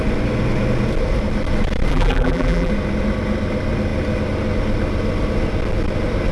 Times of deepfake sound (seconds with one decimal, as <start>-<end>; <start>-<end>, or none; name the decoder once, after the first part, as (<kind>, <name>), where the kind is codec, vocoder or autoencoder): 1.9-2.7 (vocoder, BigVGAN v2)